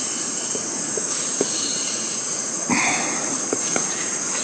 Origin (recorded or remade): remade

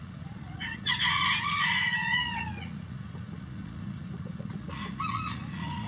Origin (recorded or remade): remade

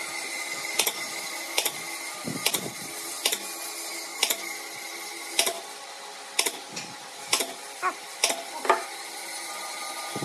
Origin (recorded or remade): recorded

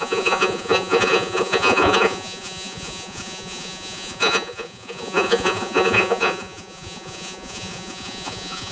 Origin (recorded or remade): remade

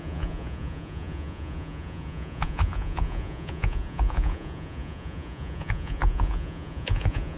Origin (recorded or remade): remade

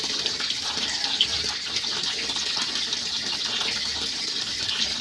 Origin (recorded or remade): recorded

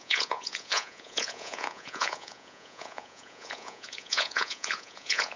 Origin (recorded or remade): remade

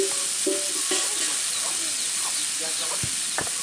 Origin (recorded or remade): recorded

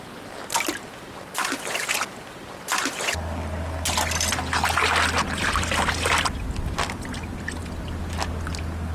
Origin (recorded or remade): recorded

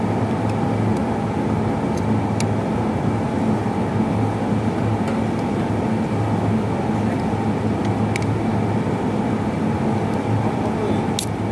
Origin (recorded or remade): recorded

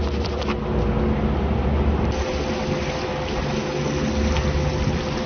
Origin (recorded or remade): recorded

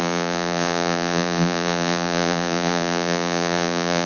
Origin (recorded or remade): remade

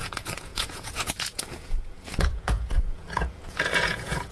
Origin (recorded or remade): remade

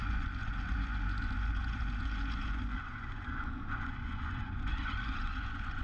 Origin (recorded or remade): remade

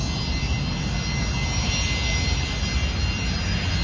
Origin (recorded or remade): recorded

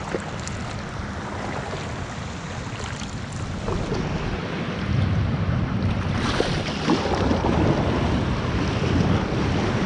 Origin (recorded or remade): recorded